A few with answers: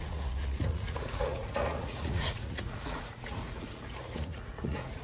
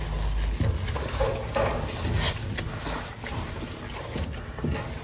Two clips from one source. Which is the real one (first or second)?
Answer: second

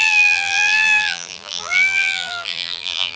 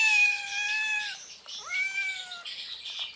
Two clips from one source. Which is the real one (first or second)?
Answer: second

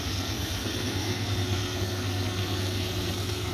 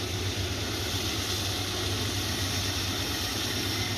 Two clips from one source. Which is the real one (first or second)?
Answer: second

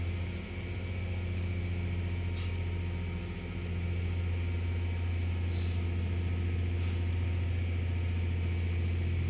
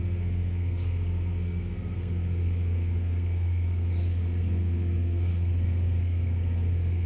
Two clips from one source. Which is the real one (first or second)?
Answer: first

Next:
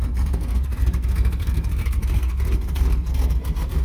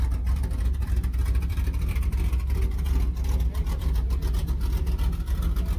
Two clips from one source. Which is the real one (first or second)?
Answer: second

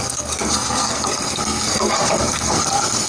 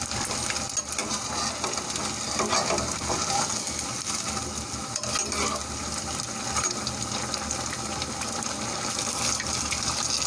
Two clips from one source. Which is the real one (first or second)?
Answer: second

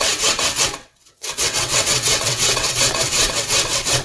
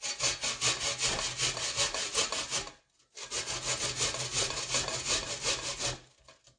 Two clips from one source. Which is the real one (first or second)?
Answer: second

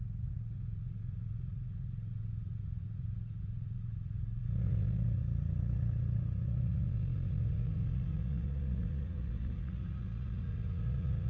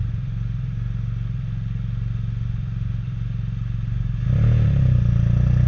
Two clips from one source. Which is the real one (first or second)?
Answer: second